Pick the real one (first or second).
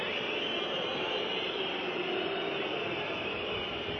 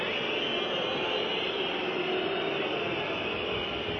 second